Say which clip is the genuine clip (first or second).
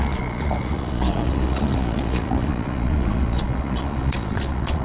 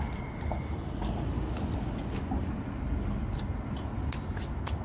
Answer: second